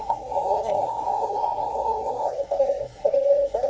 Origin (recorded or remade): remade